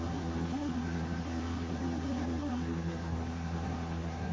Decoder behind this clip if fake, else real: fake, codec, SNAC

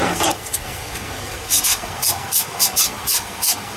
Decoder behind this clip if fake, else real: fake, codec, SNAC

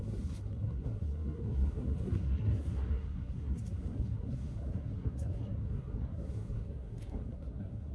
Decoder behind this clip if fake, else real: fake, codec, SNAC